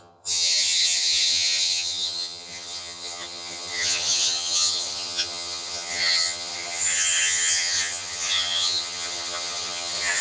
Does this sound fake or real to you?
fake